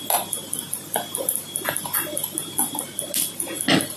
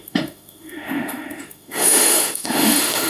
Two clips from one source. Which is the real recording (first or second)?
first